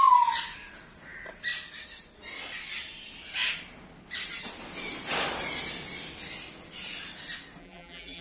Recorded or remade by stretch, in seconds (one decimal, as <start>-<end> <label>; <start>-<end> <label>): 0.0-7.6 recorded; 7.6-8.2 remade